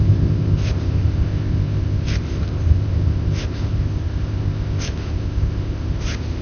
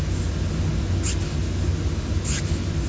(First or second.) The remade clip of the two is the first